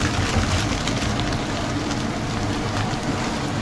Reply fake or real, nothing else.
fake